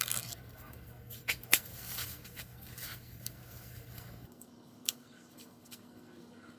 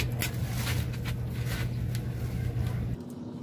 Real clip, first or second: second